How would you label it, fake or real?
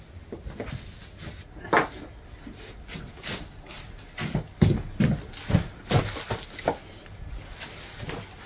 real